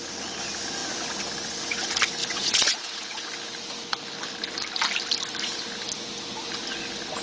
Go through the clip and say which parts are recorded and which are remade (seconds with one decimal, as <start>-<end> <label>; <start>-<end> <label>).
0.0-2.2 recorded; 2.2-3.3 remade; 3.3-7.2 recorded